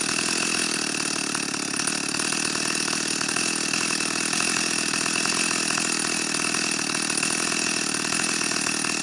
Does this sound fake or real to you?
real